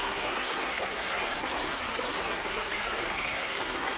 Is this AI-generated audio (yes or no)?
yes